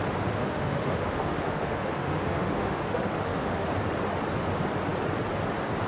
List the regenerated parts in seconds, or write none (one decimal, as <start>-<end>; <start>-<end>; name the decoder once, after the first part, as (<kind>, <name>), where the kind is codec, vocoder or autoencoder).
0.4-3.7 (autoencoder, DAC-VAE)